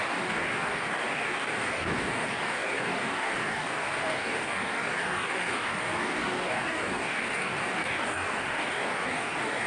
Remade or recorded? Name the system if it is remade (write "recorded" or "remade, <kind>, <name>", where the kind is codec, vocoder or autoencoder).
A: remade, codec, DAC